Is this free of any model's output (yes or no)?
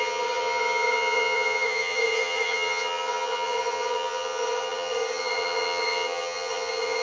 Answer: no